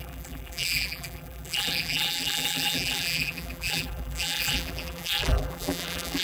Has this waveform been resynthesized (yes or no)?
yes